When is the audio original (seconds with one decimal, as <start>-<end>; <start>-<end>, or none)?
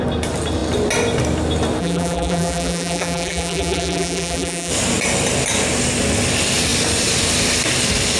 0.0-1.8; 4.7-8.2